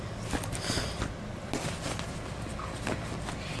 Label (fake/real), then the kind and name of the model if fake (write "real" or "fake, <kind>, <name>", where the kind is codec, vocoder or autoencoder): real